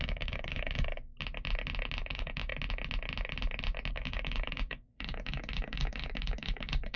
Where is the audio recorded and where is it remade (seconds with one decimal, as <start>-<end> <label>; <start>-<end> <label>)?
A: 0.0-0.9 remade; 0.9-2.1 recorded; 2.1-2.5 remade; 2.5-3.9 recorded; 3.9-7.0 remade